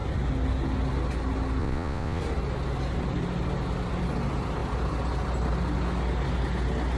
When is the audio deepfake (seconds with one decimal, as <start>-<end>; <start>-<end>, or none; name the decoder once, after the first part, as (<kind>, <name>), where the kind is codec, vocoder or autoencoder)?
1.6-2.2 (vocoder, Vocos)